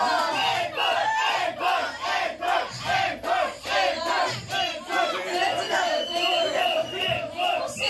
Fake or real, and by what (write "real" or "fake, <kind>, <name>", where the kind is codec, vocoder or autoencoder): real